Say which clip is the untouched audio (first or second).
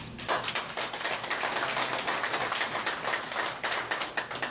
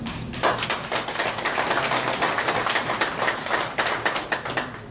first